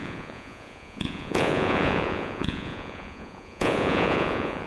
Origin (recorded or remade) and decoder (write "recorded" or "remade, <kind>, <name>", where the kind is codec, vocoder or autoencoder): remade, vocoder, Vocos